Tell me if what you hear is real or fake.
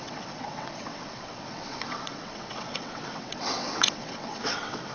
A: fake